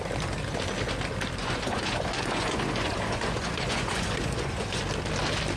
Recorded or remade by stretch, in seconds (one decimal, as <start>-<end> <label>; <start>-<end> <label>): 0.0-1.4 recorded; 1.4-4.8 remade; 4.8-5.6 recorded